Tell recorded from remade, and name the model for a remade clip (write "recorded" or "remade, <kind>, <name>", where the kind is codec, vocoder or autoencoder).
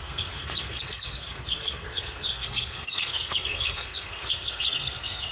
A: remade, codec, SNAC